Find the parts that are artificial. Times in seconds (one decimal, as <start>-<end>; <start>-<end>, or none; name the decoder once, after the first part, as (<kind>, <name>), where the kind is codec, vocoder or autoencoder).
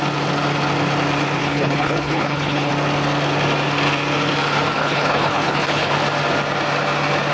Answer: 1.4-2.7 (codec, HILCodec); 4.8-5.9